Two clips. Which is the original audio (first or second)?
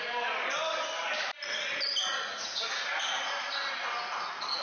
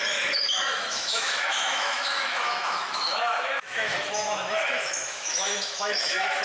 first